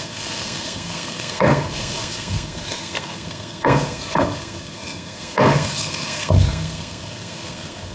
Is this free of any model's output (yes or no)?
no